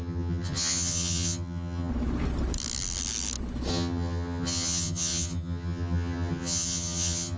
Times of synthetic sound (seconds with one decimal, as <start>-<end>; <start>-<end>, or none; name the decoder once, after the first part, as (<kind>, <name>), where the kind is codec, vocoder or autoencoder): 0.0-1.9 (vocoder, HiFi-GAN); 3.7-7.4